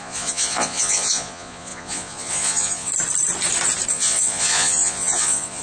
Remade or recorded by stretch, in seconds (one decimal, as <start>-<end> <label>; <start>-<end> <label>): 0.0-2.9 remade; 2.9-3.9 recorded; 3.9-5.6 remade